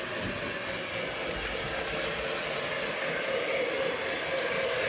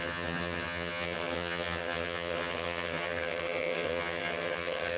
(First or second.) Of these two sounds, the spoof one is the second